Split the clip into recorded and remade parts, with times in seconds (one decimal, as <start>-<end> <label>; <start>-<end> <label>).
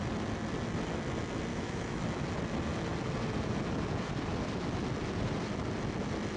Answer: 0.0-1.5 recorded; 1.5-2.0 remade; 2.0-6.4 recorded